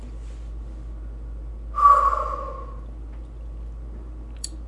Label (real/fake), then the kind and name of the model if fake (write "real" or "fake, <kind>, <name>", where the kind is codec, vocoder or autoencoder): real